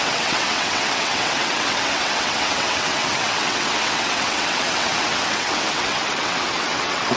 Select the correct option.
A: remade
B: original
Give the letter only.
A